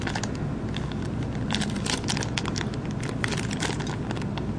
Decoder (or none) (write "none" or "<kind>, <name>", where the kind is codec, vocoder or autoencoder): none